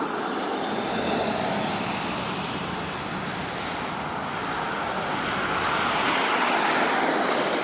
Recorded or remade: recorded